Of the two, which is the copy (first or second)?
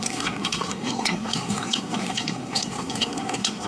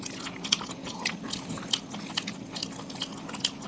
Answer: first